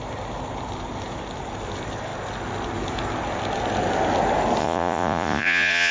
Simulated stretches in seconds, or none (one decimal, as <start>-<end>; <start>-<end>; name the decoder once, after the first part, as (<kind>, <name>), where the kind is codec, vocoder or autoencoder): 4.6-5.9 (vocoder, Vocos)